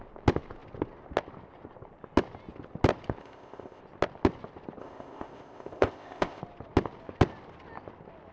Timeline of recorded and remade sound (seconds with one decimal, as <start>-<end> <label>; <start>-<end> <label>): 0.0-3.2 recorded; 3.2-3.8 remade; 3.8-4.8 recorded; 4.8-6.4 remade; 6.4-8.3 recorded